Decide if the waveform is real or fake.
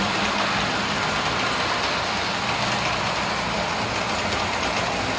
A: real